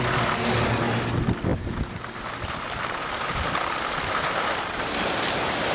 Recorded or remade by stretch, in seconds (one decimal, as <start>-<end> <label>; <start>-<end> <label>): 0.0-1.5 recorded; 1.5-4.9 remade; 4.9-5.7 recorded